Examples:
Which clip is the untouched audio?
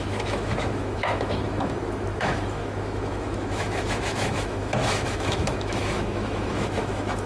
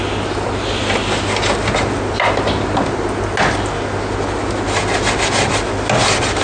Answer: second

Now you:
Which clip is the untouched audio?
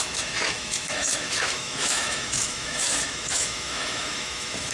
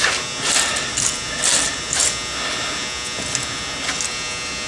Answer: second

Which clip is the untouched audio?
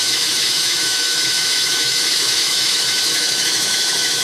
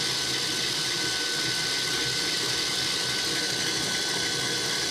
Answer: second